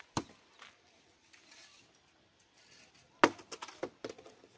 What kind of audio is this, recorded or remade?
recorded